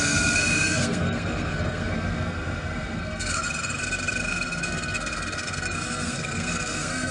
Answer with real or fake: fake